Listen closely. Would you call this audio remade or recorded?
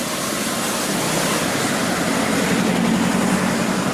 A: recorded